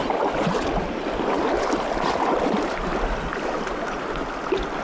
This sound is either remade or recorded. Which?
recorded